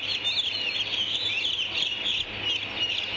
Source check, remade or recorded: recorded